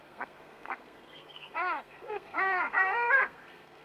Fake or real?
fake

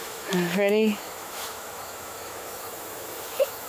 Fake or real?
fake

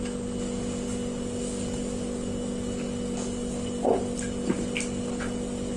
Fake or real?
real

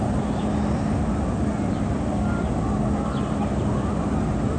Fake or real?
real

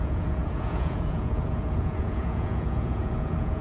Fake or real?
fake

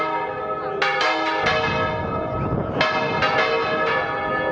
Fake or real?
real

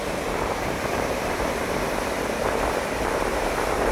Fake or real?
real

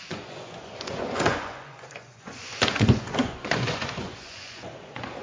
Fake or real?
fake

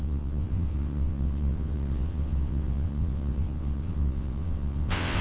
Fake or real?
fake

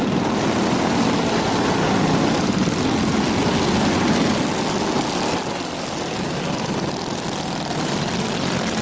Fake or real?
real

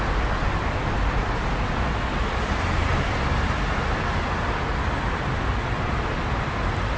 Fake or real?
real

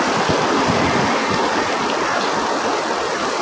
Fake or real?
fake